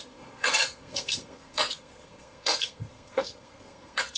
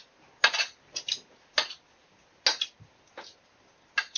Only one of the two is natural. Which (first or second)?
second